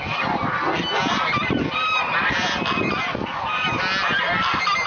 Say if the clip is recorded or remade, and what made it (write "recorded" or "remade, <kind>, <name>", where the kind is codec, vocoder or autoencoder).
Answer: recorded